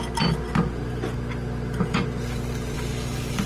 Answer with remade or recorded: recorded